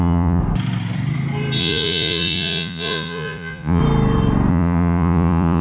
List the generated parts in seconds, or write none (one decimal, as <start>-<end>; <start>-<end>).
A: 0.0-0.4; 1.6-3.8; 4.5-5.6